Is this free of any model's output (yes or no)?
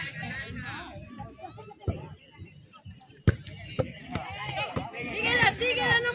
yes